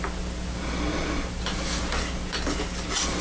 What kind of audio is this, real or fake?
real